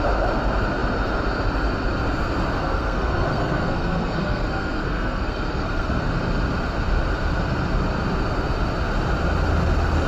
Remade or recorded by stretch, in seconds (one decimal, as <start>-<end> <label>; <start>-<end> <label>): 0.0-2.6 recorded; 2.6-6.1 remade; 6.1-10.1 recorded